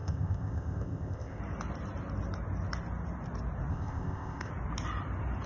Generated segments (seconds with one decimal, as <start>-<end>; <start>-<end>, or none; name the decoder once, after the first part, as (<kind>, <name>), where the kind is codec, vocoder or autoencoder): 0.0-1.4 (codec, ZipCodec); 3.7-4.5